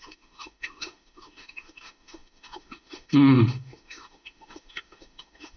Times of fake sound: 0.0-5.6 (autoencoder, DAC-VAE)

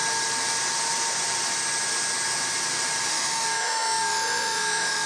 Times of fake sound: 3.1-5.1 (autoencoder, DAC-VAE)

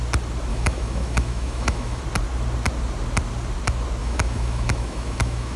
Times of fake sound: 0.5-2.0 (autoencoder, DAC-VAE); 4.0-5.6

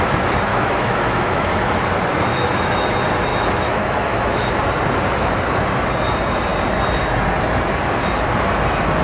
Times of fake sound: 0.5-1.8 (autoencoder, DAC-VAE); 2.3-2.9; 3.3-4.5